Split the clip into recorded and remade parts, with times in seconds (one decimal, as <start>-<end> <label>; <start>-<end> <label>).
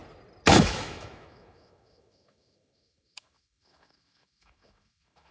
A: 0.0-0.5 recorded; 0.5-5.3 remade